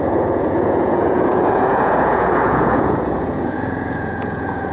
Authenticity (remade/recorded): remade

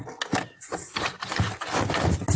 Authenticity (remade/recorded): recorded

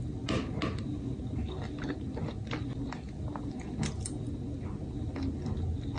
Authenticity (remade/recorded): recorded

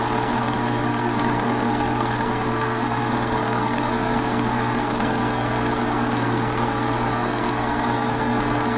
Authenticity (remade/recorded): remade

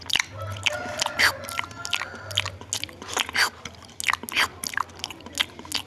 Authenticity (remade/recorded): recorded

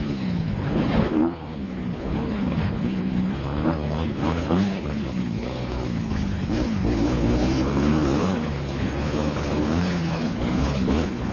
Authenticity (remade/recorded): remade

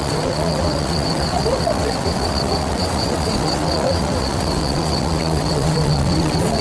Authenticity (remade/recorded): remade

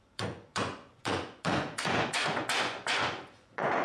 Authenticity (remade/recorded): remade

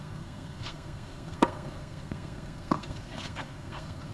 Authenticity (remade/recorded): remade